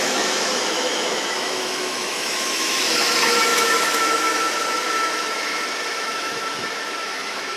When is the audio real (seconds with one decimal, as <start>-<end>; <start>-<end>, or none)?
none